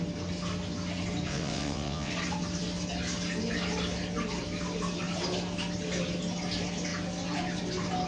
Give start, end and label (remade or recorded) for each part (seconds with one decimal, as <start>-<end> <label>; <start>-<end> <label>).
0.0-1.3 recorded; 1.3-2.1 remade; 2.1-8.1 recorded